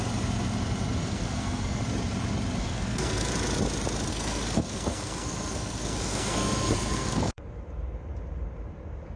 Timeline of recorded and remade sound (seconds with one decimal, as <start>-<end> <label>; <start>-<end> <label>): 0.0-1.0 recorded; 1.0-1.8 remade; 1.8-2.6 recorded; 2.6-3.3 remade; 3.3-4.1 recorded; 4.1-7.4 remade; 7.4-9.2 recorded